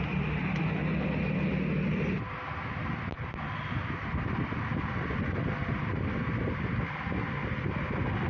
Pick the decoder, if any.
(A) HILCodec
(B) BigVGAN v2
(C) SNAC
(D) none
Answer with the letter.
D